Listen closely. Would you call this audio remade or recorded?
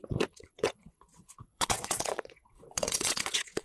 remade